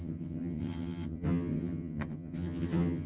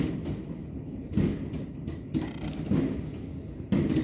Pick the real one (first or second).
second